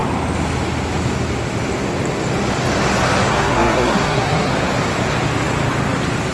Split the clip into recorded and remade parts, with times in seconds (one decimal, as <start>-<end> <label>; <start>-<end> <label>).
0.0-3.3 recorded; 3.3-4.5 remade; 4.5-6.3 recorded